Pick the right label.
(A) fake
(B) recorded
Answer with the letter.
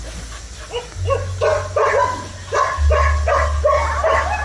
B